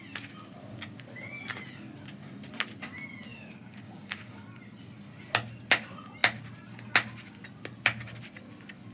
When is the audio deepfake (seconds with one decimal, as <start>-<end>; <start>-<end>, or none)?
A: 3.3-4.3